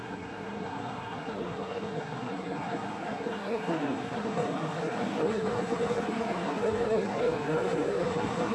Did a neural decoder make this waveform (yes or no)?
yes